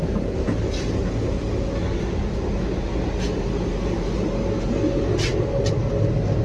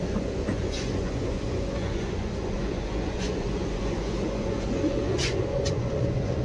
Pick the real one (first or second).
first